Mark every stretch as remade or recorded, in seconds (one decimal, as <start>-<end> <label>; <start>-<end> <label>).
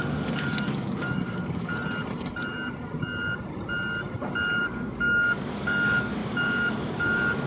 0.0-1.7 remade; 1.7-4.6 recorded; 4.6-7.5 remade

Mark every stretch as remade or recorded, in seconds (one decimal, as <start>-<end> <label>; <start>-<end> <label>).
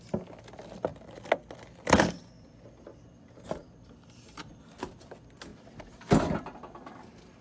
0.0-7.4 recorded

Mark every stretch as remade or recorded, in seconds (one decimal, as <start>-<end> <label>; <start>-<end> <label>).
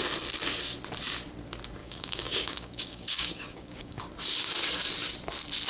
0.0-1.8 recorded; 1.8-4.0 remade; 4.0-5.7 recorded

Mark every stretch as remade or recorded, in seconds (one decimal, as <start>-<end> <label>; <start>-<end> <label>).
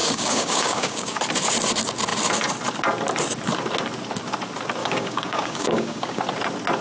0.0-1.2 remade; 1.2-4.8 recorded; 4.8-6.2 remade; 6.2-6.8 recorded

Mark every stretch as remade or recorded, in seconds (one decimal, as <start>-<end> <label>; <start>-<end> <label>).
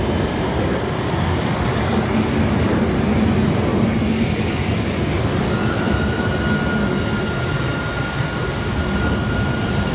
0.0-0.5 recorded; 0.5-2.7 remade; 2.7-3.9 recorded; 3.9-5.2 remade; 5.2-9.9 recorded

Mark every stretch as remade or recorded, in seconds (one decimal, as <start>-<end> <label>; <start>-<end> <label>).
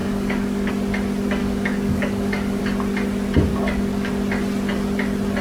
0.0-0.7 remade; 0.7-1.4 recorded; 1.4-2.6 remade; 2.6-3.5 recorded; 3.5-4.1 remade; 4.1-5.4 recorded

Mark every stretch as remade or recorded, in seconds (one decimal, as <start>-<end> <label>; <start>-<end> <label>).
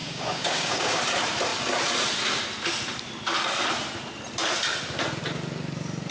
0.0-1.0 remade; 1.0-6.1 recorded